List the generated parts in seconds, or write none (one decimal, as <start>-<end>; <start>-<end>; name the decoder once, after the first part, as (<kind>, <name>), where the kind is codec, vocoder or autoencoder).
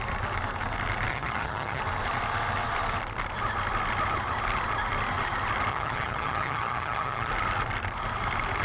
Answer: 1.1-1.8 (vocoder, HiFi-GAN); 5.7-7.3